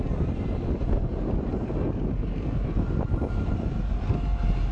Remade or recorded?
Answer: recorded